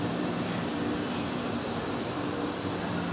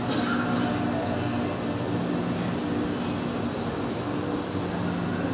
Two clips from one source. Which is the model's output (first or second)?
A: first